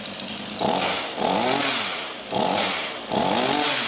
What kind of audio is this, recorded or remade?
recorded